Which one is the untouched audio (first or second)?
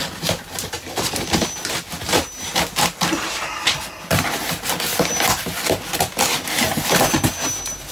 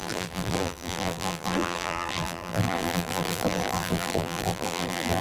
first